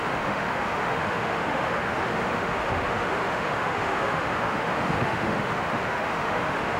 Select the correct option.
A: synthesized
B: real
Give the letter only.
A